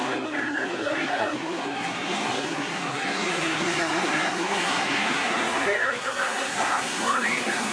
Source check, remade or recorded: remade